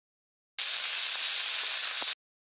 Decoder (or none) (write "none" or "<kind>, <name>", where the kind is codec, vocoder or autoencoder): none